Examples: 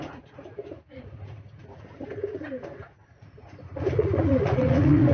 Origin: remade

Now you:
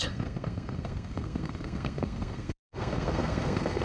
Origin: remade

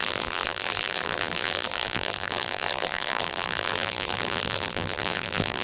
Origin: remade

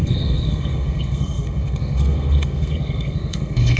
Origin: remade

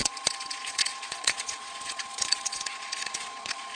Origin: remade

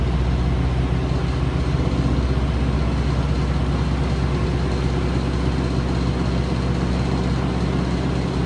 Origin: recorded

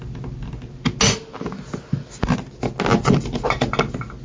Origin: recorded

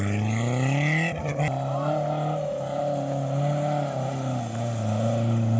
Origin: recorded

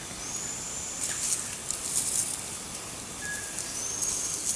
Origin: recorded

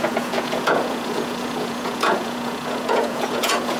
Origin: remade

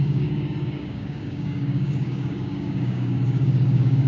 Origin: remade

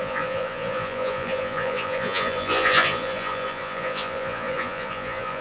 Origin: remade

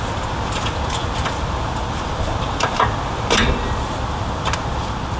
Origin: recorded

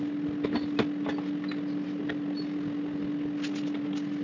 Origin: recorded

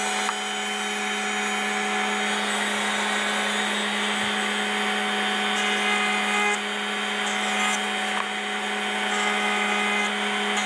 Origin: recorded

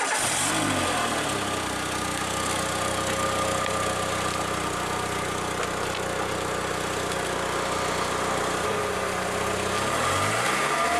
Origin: recorded